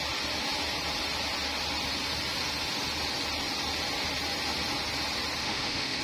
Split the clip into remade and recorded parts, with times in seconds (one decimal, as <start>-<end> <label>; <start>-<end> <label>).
0.0-5.4 recorded; 5.4-6.0 remade